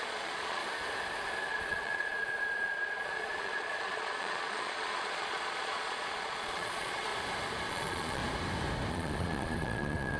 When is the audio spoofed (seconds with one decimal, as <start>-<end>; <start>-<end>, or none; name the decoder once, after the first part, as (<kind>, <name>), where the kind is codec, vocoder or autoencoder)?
0.0-0.6 (vocoder, Vocos); 1.5-7.1; 7.7-8.2; 8.9-10.2